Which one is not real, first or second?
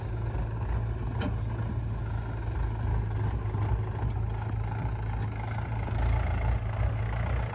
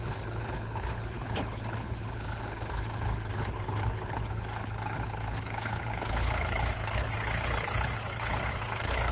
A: second